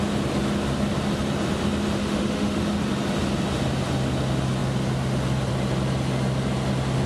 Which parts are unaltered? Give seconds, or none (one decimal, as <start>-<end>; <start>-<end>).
0.0-2.0; 2.6-7.1